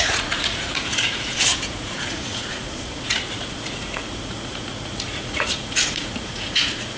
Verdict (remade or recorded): remade